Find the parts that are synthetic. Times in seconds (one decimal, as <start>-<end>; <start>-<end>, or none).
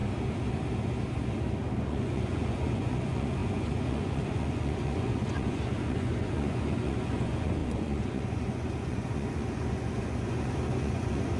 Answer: 1.8-11.4